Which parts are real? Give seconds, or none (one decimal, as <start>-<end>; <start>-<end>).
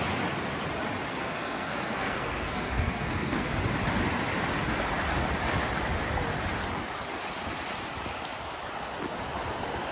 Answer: 0.0-1.1; 3.6-9.9